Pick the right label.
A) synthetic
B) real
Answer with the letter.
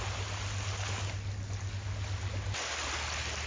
B